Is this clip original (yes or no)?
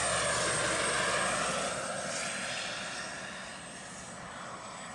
yes